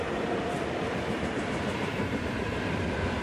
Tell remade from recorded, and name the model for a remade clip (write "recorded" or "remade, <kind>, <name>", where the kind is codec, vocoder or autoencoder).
remade, vocoder, BigVGAN v2